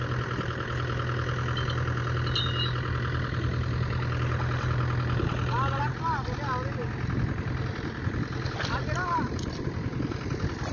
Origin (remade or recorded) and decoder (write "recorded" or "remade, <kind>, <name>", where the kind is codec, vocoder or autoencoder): recorded